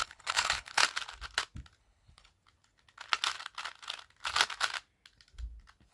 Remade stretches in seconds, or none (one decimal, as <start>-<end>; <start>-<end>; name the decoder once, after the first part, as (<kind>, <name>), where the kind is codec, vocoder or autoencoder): 0.0-0.8 (codec, HILCodec); 1.8-2.3